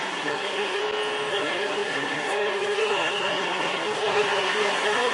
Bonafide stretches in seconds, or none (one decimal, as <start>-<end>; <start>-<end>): 0.8-1.3